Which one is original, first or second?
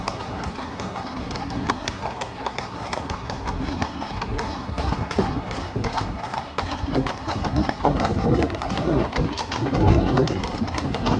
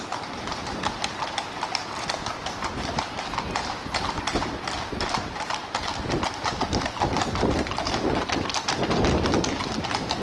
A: second